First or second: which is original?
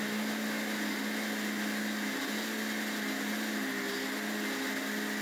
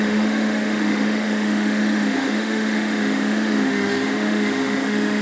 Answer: first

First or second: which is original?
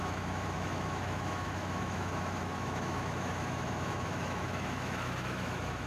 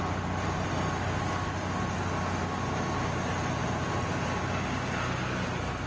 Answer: second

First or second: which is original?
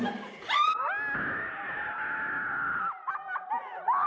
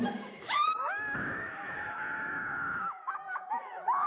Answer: first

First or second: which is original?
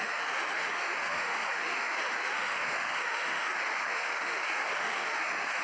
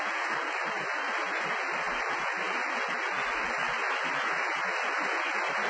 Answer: second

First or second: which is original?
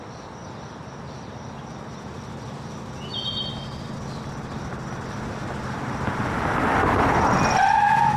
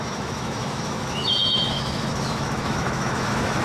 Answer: first